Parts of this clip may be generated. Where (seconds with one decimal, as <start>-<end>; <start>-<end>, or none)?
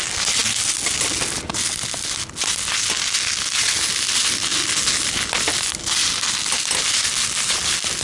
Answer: none